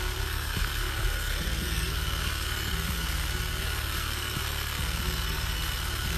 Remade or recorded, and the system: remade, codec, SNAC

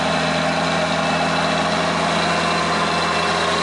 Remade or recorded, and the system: recorded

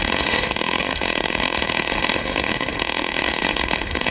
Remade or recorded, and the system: remade, autoencoder, DAC-VAE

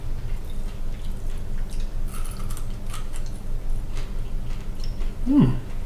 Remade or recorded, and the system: recorded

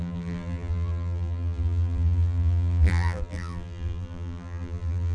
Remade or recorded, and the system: remade, vocoder, BigVGAN v2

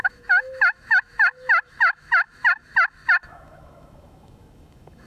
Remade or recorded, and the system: remade, autoencoder, DAC-VAE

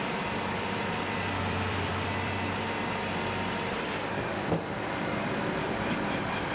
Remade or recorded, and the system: remade, vocoder, BigVGAN v2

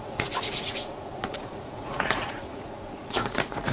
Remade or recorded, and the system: remade, vocoder, Vocos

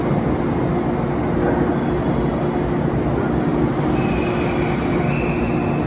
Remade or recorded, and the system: recorded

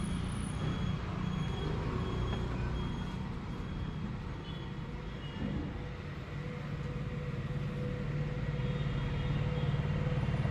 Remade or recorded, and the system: recorded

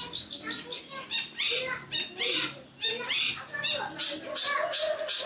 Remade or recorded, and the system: recorded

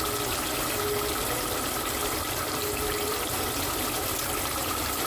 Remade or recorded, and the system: recorded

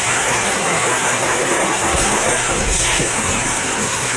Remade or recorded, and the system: remade, codec, SNAC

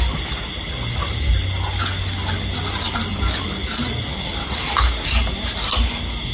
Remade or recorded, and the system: recorded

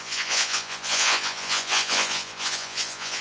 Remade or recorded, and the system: remade, vocoder, Vocos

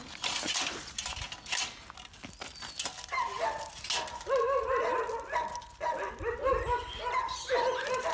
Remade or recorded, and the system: recorded